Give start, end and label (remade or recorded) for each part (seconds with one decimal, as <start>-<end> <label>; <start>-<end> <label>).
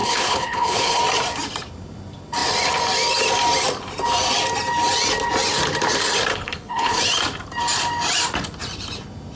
0.0-1.0 remade; 1.0-6.3 recorded; 6.3-7.0 remade; 7.0-9.4 recorded